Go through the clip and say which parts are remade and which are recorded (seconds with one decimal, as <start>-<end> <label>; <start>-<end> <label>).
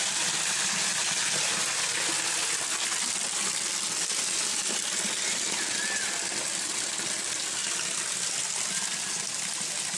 0.0-10.0 recorded